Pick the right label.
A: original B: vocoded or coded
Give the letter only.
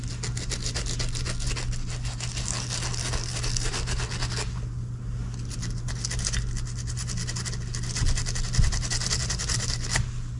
A